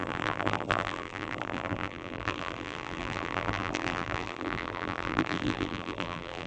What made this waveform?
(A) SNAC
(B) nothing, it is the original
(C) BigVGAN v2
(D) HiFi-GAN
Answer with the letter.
C